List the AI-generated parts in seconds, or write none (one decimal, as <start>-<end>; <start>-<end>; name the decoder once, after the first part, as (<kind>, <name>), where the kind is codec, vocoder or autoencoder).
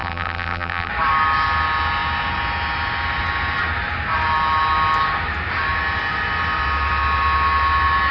0.0-0.9 (vocoder, BigVGAN v2)